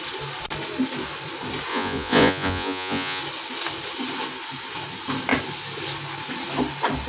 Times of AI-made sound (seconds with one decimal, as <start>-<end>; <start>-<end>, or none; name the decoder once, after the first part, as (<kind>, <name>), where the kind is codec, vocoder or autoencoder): 1.7-3.2 (vocoder, Vocos)